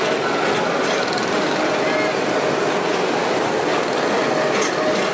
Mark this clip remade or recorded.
recorded